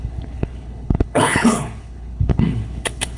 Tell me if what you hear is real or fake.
fake